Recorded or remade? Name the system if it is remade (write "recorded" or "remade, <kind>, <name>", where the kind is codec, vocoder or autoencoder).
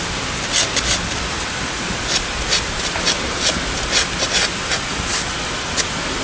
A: recorded